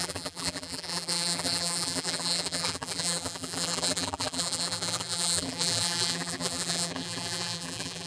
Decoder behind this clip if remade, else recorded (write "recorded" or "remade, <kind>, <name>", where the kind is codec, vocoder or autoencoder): remade, vocoder, BigVGAN v2